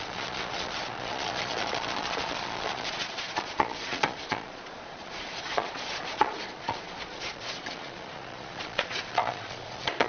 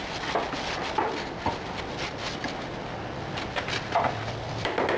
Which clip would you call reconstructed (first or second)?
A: first